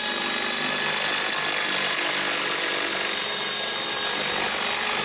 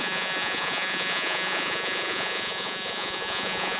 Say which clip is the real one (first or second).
first